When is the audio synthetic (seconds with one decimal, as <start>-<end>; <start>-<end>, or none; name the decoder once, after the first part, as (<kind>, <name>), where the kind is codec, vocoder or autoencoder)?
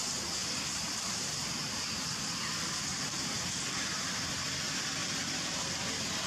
0.4-3.8 (vocoder, BigVGAN v2); 5.0-5.6